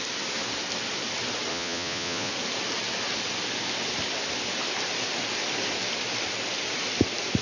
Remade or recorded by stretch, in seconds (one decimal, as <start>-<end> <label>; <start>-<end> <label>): 0.0-1.5 recorded; 1.5-2.3 remade; 2.3-7.4 recorded